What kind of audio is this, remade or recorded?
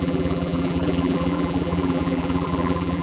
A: remade